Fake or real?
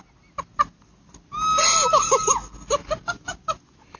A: real